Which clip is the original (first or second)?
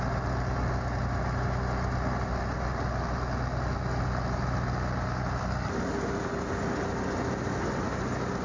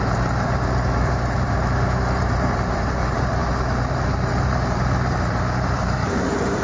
first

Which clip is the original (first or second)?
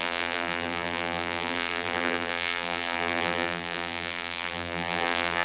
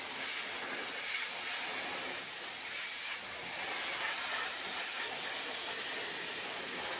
second